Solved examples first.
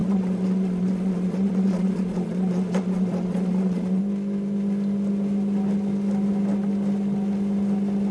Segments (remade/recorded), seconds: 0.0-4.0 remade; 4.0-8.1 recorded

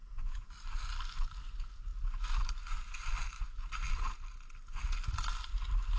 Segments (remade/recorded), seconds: 0.0-6.0 recorded